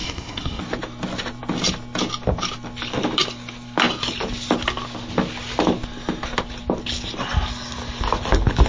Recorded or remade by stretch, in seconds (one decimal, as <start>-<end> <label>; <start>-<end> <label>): 0.0-0.6 remade; 0.6-8.7 recorded